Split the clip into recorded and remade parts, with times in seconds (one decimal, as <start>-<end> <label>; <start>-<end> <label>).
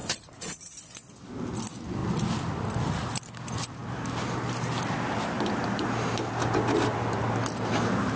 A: 0.0-0.8 remade; 0.8-8.2 recorded